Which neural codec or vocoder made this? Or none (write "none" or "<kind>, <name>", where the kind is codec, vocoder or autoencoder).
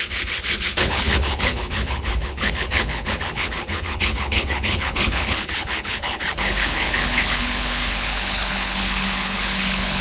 codec, HILCodec